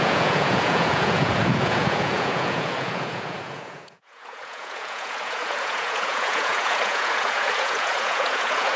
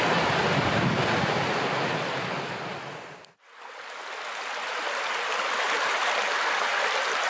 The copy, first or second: first